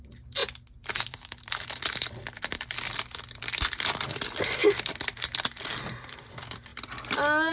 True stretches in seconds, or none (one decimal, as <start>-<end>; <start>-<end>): 6.7-7.5

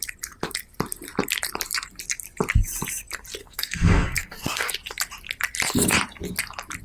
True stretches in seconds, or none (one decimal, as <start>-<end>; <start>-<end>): 0.0-3.4; 4.7-6.8

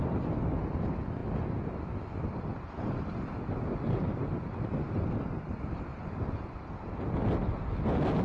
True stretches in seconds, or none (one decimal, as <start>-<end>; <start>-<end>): 0.0-8.2

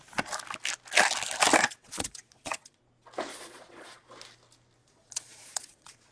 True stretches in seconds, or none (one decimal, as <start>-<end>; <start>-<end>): 0.0-1.6; 2.8-3.3; 4.1-4.8

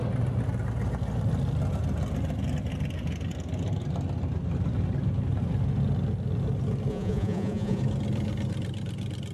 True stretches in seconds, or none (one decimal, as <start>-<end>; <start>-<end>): 0.0-6.9; 7.8-9.3